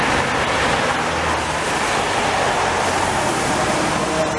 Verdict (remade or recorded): recorded